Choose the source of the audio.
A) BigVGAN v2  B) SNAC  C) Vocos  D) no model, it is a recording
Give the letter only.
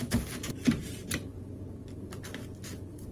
D